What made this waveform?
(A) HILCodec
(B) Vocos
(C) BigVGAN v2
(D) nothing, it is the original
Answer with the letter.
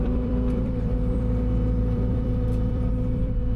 C